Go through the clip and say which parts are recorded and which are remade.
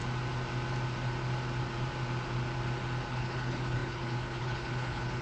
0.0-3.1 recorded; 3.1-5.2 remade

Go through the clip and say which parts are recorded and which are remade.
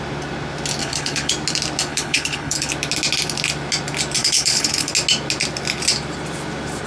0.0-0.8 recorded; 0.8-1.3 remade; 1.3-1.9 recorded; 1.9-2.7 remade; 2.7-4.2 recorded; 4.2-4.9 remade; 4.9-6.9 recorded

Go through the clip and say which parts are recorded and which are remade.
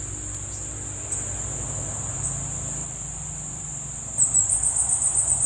0.0-5.5 recorded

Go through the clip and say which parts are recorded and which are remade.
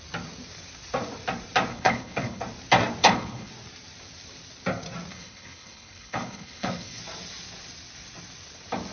0.0-1.7 recorded; 1.7-2.4 remade; 2.4-3.0 recorded; 3.0-3.5 remade; 3.5-5.1 recorded; 5.1-7.0 remade; 7.0-8.9 recorded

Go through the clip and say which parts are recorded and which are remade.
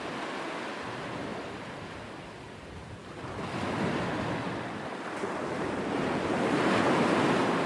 0.0-7.7 recorded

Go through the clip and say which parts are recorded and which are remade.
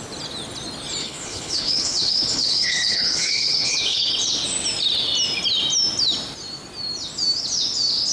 0.0-1.0 recorded; 1.0-4.1 remade; 4.1-8.1 recorded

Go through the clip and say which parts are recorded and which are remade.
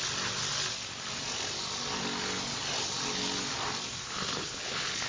0.0-4.1 recorded; 4.1-5.1 remade